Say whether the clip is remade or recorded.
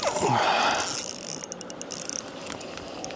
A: recorded